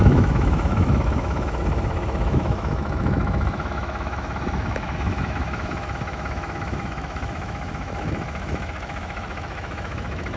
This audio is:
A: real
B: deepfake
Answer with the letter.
B